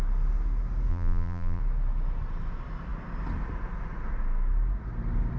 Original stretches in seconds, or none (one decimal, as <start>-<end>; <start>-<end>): 0.0-0.9; 1.6-5.4